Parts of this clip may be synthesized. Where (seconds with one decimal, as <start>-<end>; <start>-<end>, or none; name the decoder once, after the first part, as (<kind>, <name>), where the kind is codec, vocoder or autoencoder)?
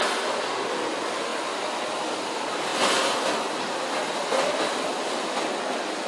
none